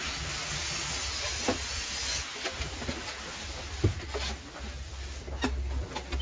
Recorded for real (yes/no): yes